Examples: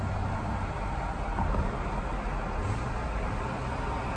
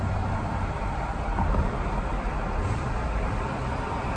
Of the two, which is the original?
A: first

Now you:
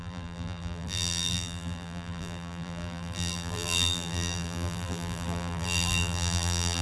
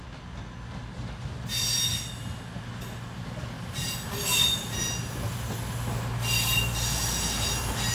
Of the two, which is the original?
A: second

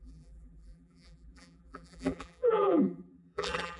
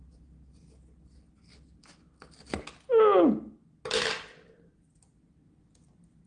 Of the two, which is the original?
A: second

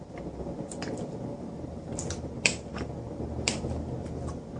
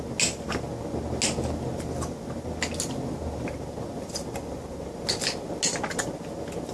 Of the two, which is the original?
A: second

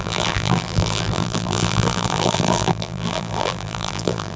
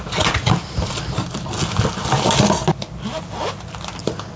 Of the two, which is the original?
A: second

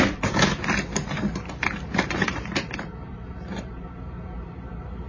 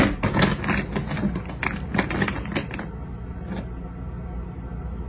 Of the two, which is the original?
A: second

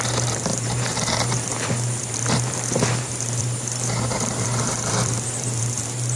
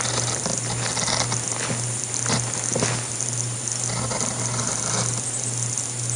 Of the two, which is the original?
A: second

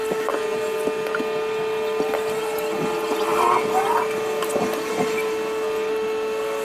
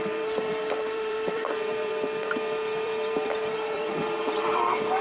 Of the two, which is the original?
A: first